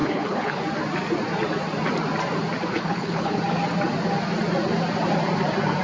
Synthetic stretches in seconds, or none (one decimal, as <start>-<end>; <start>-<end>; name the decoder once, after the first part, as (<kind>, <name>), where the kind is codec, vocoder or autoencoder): 0.0-0.6 (codec, HILCodec); 2.7-3.4